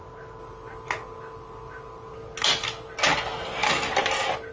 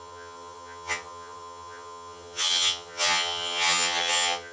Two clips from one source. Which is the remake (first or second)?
second